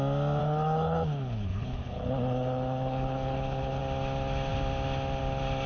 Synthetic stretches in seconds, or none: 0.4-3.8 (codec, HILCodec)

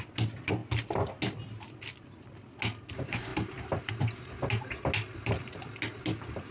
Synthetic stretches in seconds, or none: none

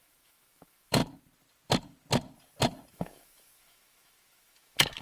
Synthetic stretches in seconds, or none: 0.0-1.0 (autoencoder, DAC-VAE); 2.9-5.0

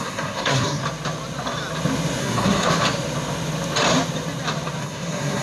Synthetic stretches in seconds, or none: 0.0-0.8 (codec, SNAC); 2.2-2.7; 4.8-5.4

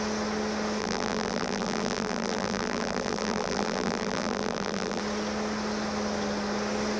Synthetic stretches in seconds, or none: 0.8-5.0 (vocoder, BigVGAN v2)

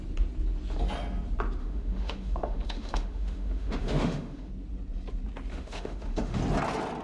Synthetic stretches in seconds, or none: 1.6-4.5 (autoencoder, DAC-VAE); 5.5-6.4

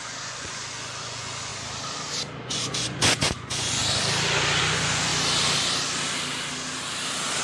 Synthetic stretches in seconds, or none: 0.0-1.5 (vocoder, Vocos); 2.4-3.8; 4.6-5.1